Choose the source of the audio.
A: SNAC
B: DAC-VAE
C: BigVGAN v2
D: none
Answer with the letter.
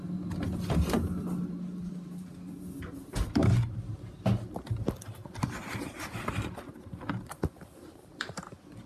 D